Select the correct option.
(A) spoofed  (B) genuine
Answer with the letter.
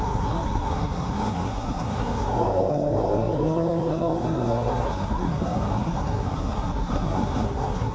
A